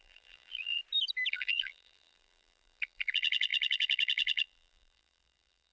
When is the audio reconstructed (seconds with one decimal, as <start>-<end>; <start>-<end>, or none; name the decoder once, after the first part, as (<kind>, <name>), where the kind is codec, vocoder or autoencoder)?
0.0-0.8 (vocoder, BigVGAN v2); 1.3-5.7